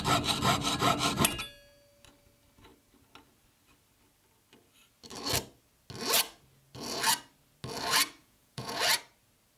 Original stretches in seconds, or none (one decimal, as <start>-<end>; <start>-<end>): 0.0-8.2; 8.8-9.6